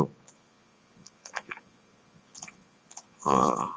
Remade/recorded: remade